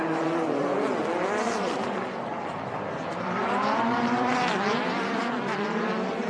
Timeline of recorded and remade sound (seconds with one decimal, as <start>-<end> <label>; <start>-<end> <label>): 0.0-6.3 remade